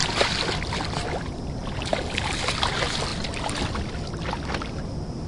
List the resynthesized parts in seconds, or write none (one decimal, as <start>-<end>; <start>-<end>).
none